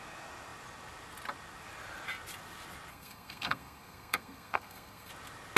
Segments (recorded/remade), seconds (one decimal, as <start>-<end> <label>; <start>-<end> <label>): 0.0-2.9 recorded; 2.9-5.1 remade; 5.1-5.6 recorded